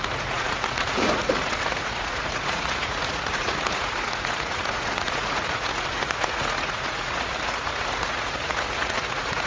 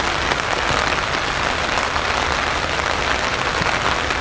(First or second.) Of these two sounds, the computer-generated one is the first